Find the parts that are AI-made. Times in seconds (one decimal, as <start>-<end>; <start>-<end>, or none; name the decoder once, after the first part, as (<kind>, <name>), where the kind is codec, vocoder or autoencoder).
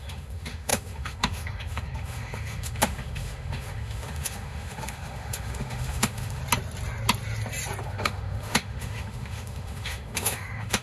0.0-6.4 (autoencoder, DAC-VAE); 7.8-10.8